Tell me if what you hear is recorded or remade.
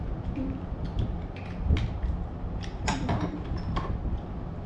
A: recorded